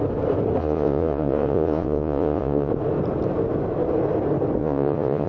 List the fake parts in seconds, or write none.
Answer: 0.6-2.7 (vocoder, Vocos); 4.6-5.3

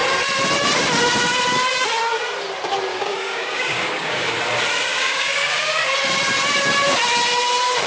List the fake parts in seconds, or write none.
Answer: 2.9-4.3 (codec, DAC); 4.9-5.8